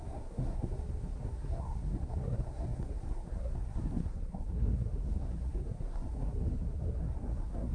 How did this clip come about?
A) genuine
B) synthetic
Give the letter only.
B